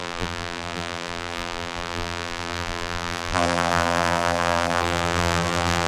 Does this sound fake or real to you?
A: fake